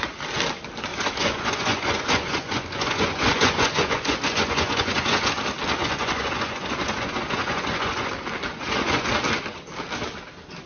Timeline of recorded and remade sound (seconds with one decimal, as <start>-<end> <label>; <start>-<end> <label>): 0.0-0.9 recorded; 0.9-5.3 remade; 5.3-5.8 recorded; 5.8-8.1 remade; 8.1-8.5 recorded; 8.5-9.1 remade; 9.1-10.7 recorded

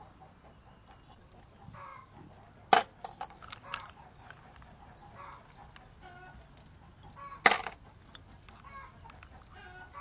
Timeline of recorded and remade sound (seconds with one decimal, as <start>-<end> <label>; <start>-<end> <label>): 0.0-10.0 recorded

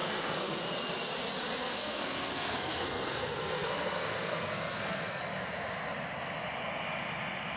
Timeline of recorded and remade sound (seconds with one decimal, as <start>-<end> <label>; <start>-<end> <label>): 0.0-0.6 remade; 0.6-1.6 recorded; 1.6-5.2 remade; 5.2-7.6 recorded

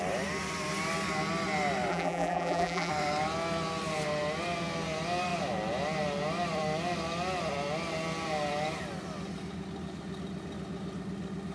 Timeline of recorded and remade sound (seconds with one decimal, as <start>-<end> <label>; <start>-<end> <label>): 0.0-1.9 recorded; 1.9-2.9 remade; 2.9-11.5 recorded

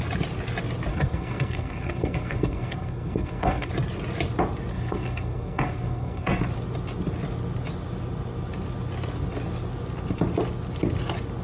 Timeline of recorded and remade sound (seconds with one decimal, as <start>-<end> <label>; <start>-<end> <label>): 0.0-0.9 recorded; 0.9-3.7 remade; 3.7-4.7 recorded; 4.7-6.4 remade; 6.4-11.4 recorded

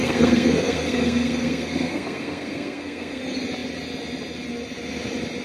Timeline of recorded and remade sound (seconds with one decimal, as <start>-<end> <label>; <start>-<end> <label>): 0.0-3.2 remade; 3.2-5.4 recorded

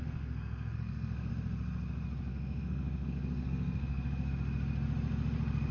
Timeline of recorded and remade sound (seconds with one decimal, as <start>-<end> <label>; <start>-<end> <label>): 0.0-1.3 remade; 1.3-2.3 recorded; 2.3-4.3 remade; 4.3-5.7 recorded